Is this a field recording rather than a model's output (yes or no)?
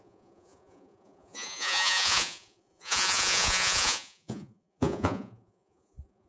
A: no